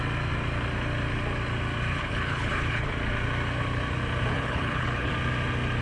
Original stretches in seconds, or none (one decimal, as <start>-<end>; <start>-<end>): 0.0-1.9; 2.9-4.3; 5.1-5.8